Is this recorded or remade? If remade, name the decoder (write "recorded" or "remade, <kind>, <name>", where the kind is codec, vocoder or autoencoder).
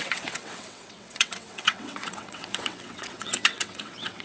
remade, vocoder, WaveNeXt